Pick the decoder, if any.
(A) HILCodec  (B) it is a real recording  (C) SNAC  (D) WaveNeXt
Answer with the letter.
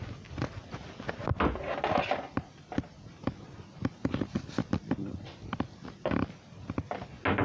B